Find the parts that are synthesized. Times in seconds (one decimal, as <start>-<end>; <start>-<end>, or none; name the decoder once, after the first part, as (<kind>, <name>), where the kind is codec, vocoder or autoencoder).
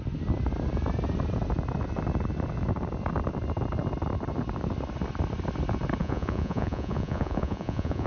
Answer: 6.0-8.1 (vocoder, Vocos)